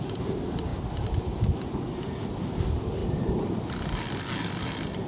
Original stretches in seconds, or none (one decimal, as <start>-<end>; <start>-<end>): 0.0-5.1